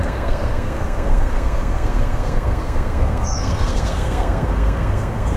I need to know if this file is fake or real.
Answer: fake